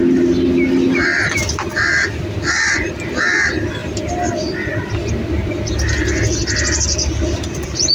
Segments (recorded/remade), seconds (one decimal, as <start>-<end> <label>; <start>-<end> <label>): 0.0-7.9 recorded